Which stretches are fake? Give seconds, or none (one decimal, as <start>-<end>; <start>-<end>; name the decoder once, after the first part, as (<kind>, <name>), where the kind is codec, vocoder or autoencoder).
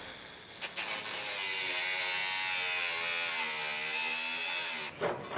none